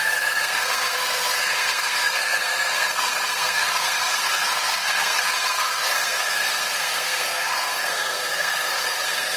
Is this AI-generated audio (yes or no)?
yes